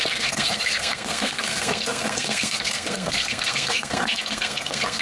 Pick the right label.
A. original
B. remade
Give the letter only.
B